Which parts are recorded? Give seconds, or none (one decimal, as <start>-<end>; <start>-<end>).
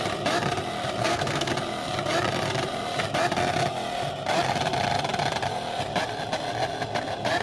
0.0-1.0; 1.5-7.4